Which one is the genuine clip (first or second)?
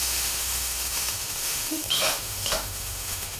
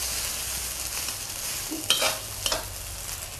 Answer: second